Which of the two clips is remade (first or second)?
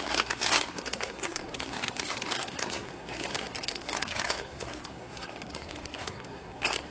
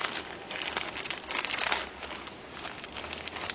first